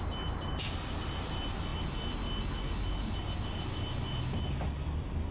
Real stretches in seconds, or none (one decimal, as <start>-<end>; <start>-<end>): 0.0-5.3